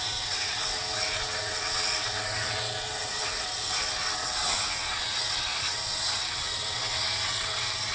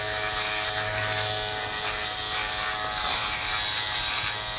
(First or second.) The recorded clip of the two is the second